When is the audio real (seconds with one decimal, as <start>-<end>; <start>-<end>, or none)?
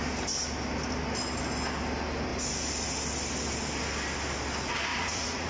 0.0-4.9